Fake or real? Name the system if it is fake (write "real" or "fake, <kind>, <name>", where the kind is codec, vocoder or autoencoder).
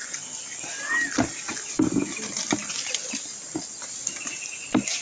real